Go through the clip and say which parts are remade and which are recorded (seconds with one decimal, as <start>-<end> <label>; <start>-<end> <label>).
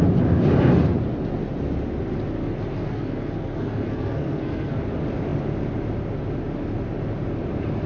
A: 0.0-2.4 recorded; 2.4-4.8 remade; 4.8-7.9 recorded